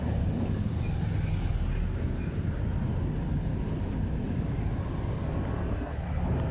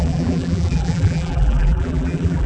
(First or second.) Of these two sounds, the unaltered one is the first